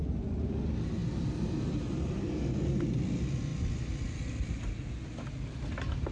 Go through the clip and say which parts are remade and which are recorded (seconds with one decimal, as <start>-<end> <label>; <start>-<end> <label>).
0.0-6.1 recorded